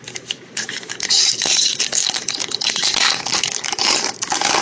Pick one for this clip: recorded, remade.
remade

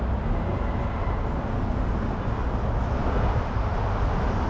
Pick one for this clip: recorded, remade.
recorded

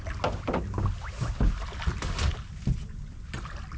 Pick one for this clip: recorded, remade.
recorded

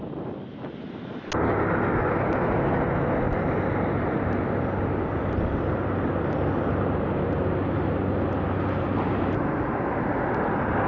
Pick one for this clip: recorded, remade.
recorded